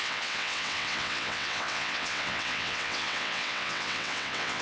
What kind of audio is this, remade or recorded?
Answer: remade